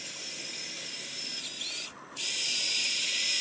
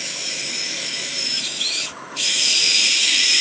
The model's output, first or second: second